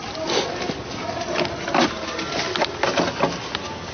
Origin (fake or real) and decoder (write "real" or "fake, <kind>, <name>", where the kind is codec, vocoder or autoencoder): real